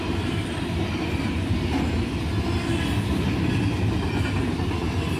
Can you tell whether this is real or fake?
real